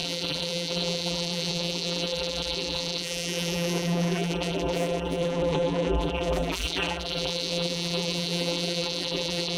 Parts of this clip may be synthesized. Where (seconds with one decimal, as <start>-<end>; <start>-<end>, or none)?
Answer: 0.0-9.6